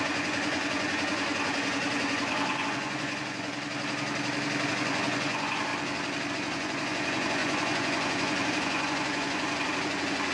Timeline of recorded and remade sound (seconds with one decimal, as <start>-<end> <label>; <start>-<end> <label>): 0.0-3.5 remade; 3.5-4.7 recorded; 4.7-5.7 remade; 5.7-6.3 recorded; 6.3-10.3 remade